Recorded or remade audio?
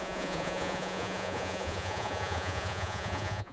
remade